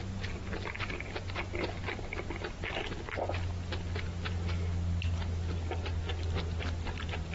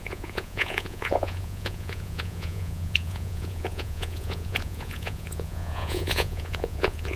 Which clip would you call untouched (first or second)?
first